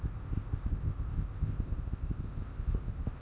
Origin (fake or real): fake